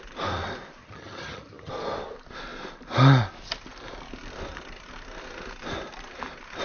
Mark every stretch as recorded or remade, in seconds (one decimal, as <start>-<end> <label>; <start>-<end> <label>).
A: 0.0-0.8 recorded; 0.8-1.7 remade; 1.7-6.6 recorded